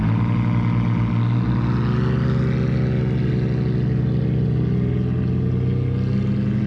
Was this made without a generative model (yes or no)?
yes